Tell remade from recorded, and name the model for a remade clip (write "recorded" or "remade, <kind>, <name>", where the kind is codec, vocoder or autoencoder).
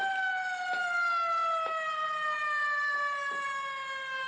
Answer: recorded